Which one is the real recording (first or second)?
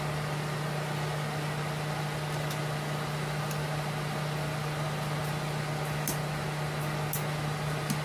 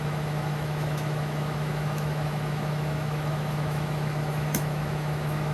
first